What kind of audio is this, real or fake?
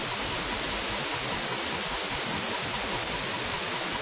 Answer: real